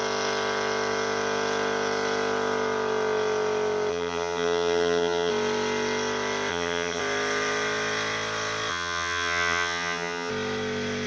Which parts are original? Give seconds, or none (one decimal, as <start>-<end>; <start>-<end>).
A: 0.0-3.9; 5.3-6.5; 7.0-8.7; 10.3-11.1